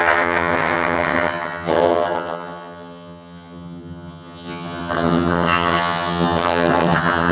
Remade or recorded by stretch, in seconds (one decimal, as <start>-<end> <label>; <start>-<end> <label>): 0.0-7.3 remade